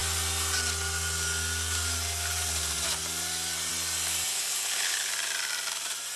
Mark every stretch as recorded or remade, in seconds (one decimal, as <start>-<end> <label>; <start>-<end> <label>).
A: 0.0-4.3 recorded; 4.3-5.1 remade; 5.1-6.2 recorded